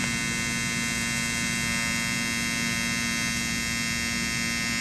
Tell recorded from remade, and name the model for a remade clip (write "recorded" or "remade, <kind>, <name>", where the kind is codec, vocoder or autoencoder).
recorded